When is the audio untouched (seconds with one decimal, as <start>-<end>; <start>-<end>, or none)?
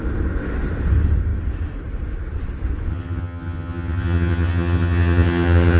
0.0-2.9